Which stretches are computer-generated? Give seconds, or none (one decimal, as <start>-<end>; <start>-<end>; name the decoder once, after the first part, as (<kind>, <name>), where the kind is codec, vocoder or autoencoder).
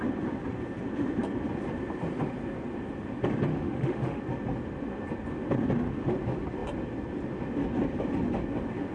3.5-4.2 (autoencoder, DAC-VAE)